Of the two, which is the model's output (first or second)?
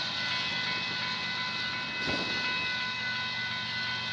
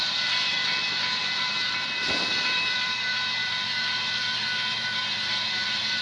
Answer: second